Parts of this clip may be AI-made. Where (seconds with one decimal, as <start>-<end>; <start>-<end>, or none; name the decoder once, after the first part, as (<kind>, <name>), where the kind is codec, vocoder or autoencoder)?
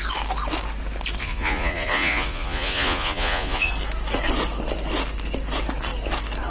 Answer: 1.2-3.7 (vocoder, Vocos)